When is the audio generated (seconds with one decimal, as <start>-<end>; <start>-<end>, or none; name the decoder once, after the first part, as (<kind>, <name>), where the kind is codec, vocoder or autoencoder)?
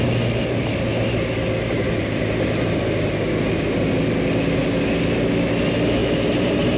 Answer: 6.0-6.8 (vocoder, BigVGAN v2)